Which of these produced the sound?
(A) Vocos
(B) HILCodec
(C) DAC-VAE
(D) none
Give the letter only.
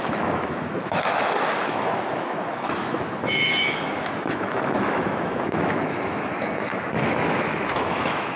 C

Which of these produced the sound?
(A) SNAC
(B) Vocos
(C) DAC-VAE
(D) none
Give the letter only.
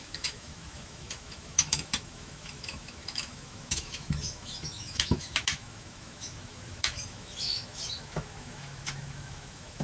C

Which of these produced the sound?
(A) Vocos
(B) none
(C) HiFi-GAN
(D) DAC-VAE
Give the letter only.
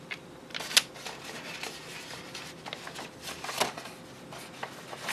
B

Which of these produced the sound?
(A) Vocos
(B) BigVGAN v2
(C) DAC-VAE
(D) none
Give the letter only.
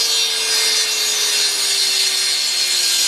D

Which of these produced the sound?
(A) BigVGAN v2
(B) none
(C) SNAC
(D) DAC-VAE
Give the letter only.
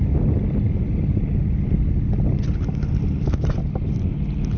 B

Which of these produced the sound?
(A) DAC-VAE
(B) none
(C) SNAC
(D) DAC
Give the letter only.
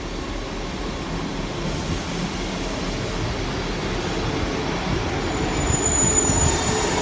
B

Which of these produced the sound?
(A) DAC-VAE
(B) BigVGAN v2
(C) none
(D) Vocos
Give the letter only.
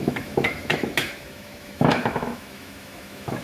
A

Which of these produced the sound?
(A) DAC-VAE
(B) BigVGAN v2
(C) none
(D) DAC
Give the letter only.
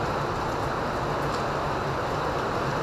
C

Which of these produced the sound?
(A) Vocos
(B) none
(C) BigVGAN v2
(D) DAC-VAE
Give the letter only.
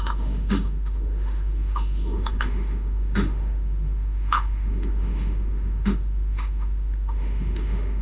D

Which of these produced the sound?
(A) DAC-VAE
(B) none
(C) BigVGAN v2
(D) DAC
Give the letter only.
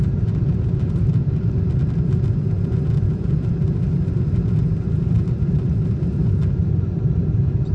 B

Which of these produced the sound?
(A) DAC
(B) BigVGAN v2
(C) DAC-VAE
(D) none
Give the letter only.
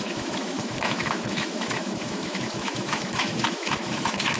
C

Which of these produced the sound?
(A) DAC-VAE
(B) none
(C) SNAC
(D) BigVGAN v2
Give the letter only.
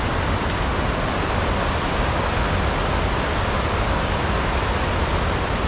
B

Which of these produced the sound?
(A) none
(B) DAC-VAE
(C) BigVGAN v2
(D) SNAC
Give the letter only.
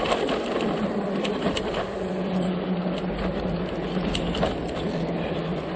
A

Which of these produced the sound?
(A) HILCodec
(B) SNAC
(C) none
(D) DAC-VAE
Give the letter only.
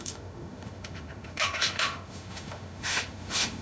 D